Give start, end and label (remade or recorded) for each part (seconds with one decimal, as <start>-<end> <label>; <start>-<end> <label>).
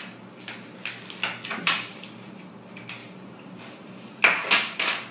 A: 0.0-1.5 recorded; 1.5-2.5 remade; 2.5-3.0 recorded; 3.0-4.1 remade; 4.1-5.1 recorded